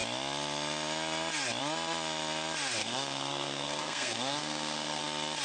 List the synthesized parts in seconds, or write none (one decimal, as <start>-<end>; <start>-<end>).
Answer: 2.8-5.0